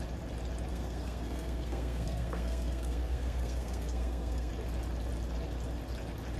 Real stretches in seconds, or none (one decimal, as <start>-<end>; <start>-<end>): 0.0-0.7; 4.5-6.4

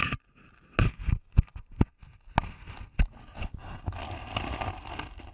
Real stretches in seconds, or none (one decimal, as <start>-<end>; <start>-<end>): 0.0-5.3

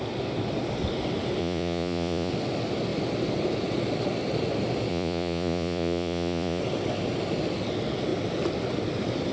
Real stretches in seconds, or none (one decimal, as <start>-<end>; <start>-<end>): 0.0-1.4; 2.3-4.9; 6.6-9.3

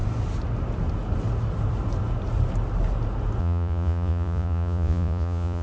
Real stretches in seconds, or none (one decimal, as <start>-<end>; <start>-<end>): 0.0-3.4

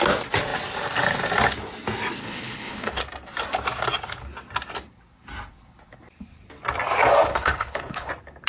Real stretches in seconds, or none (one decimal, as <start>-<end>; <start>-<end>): 0.0-2.2; 3.0-7.3; 8.1-8.5

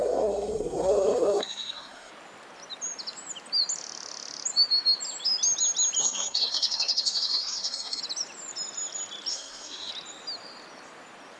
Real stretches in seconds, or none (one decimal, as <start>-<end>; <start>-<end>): 2.1-6.0; 8.0-9.3; 9.9-11.4

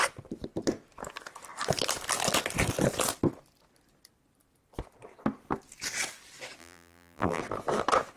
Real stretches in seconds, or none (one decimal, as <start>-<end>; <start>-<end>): 0.0-6.6; 7.4-8.2